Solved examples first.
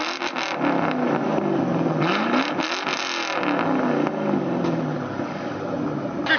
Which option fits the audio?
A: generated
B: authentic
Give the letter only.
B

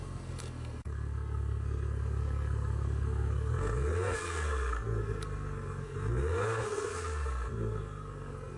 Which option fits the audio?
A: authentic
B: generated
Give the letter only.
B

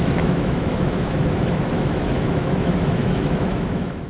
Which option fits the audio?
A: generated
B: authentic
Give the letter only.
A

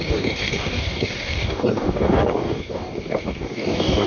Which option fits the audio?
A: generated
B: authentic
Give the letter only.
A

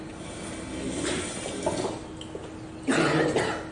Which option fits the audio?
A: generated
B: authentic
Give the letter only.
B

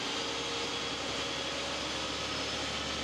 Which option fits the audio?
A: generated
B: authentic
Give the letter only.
B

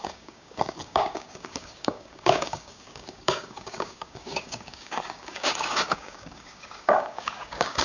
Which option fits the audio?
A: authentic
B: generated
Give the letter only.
B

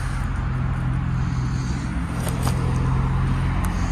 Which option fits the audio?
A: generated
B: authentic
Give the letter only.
B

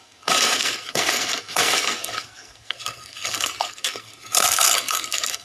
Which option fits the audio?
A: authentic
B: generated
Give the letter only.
B